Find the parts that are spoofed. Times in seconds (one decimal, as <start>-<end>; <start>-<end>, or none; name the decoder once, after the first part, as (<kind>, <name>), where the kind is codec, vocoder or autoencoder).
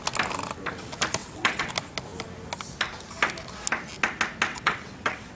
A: 1.2-1.7 (vocoder, WaveNeXt); 4.5-5.3